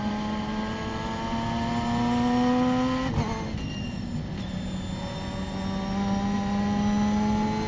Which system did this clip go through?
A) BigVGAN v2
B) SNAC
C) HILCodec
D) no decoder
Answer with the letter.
D